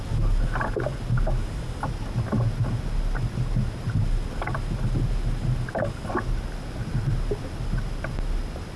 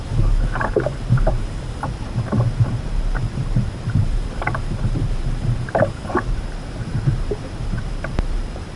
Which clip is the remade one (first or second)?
second